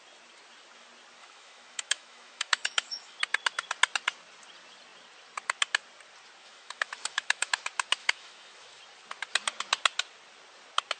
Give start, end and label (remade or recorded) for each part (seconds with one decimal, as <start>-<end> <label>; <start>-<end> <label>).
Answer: 0.0-1.2 recorded; 1.2-3.2 remade; 3.2-6.4 recorded; 6.4-7.5 remade; 7.5-8.0 recorded; 8.0-8.8 remade; 8.8-11.0 recorded